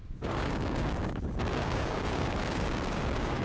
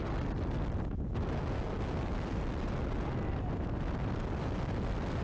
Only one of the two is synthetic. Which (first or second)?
first